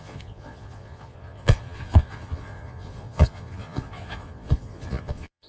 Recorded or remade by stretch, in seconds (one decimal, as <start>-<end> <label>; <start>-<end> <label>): 0.0-5.5 remade